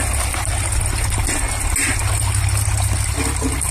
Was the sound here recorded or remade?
recorded